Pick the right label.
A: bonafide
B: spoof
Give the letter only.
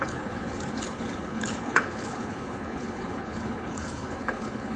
B